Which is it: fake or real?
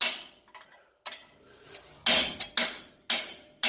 real